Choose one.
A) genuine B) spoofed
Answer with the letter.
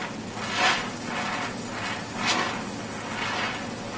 A